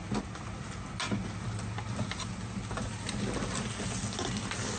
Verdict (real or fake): real